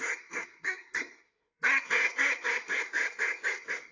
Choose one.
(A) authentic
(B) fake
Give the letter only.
B